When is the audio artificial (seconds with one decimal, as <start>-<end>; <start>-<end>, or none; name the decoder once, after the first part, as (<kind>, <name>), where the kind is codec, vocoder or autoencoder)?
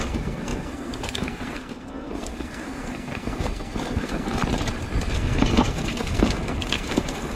0.0-4.4 (codec, SNAC); 5.1-7.4